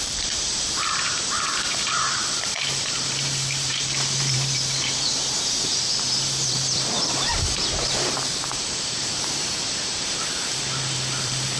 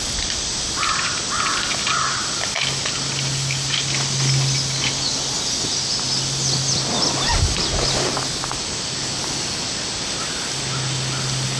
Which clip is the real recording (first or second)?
second